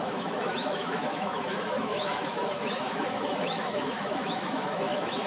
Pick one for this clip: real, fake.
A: fake